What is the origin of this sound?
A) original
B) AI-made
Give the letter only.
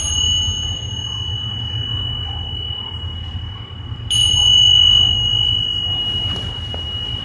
A